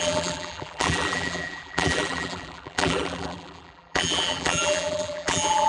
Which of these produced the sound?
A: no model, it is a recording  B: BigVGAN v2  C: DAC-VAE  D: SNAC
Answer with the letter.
B